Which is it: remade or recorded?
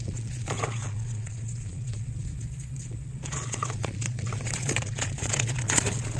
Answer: remade